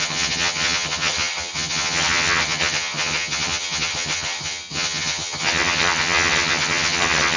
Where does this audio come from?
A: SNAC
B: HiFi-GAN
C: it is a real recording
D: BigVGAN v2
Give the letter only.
B